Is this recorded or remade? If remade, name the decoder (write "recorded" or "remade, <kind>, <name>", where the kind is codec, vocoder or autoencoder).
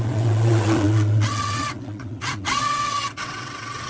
remade, vocoder, WaveNeXt